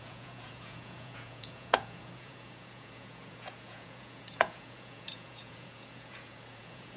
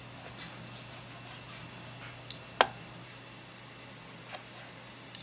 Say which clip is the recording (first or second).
second